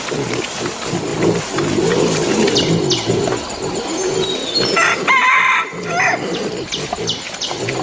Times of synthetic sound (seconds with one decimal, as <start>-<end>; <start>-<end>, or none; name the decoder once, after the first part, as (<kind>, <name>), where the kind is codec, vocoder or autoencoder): none

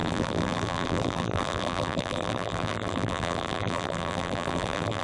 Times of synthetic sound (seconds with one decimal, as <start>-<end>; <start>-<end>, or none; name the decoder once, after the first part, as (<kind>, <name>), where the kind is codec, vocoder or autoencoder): 0.0-5.0 (vocoder, BigVGAN v2)

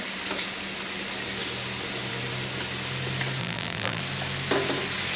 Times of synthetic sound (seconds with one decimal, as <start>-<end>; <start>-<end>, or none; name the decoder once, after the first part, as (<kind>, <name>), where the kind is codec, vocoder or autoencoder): 3.4-4.0 (vocoder, BigVGAN v2)

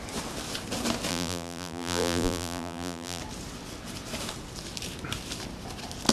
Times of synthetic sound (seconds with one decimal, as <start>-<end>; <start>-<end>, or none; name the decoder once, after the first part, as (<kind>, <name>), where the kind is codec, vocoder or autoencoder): 1.1-3.2 (vocoder, BigVGAN v2)

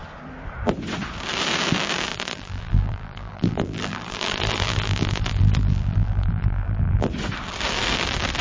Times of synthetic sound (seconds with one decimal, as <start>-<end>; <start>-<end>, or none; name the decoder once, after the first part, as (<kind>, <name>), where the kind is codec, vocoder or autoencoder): 2.1-7.1 (vocoder, BigVGAN v2)

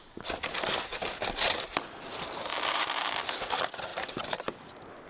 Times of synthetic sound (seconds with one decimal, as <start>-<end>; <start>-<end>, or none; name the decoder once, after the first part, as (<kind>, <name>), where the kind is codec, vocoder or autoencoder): 2.5-3.4 (vocoder, BigVGAN v2); 3.9-4.5